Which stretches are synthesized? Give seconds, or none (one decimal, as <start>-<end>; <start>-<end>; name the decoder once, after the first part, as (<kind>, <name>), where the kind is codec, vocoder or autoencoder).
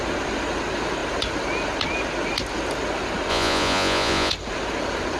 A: 3.3-4.3 (vocoder, Vocos)